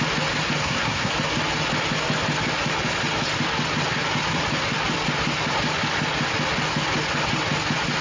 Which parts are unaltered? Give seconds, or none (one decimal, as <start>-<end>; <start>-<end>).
0.0-0.6; 1.1-8.0